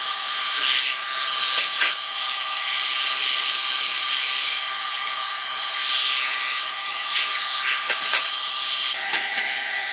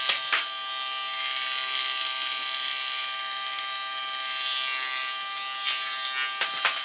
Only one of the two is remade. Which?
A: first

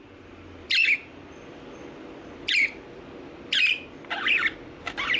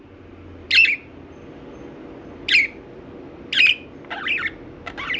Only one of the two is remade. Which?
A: first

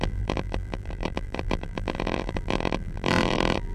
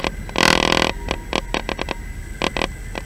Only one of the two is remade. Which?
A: first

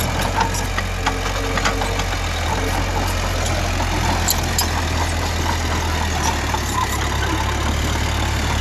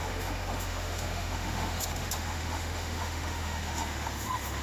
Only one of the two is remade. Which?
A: second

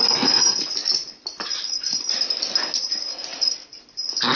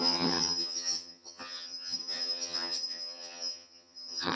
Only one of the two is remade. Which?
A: second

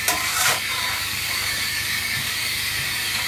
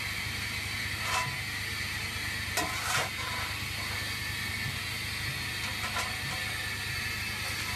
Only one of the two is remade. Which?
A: first